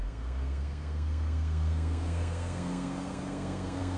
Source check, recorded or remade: remade